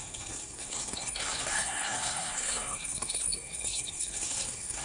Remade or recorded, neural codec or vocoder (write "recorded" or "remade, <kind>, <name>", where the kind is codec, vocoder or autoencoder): remade, codec, SNAC